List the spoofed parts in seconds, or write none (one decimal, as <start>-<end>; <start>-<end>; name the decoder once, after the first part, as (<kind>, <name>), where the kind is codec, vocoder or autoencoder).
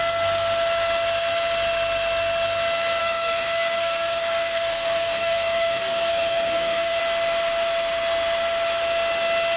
3.0-7.0 (codec, SNAC)